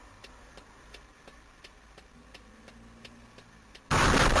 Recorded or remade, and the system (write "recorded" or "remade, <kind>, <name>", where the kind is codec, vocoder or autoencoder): remade, vocoder, BigVGAN v2